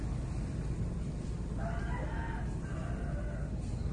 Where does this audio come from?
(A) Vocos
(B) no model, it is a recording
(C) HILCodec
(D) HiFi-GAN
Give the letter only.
B